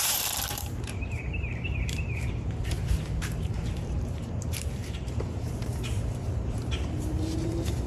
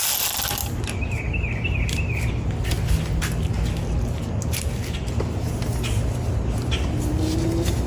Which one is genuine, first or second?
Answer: second